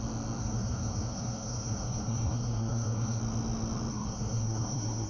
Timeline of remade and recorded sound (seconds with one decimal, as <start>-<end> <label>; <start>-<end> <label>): 0.0-0.4 recorded; 0.4-3.2 remade; 3.2-3.9 recorded; 3.9-5.1 remade